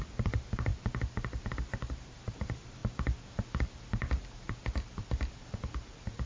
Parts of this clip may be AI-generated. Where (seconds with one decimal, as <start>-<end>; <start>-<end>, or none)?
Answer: none